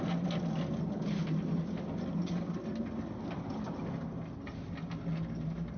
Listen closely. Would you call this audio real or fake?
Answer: real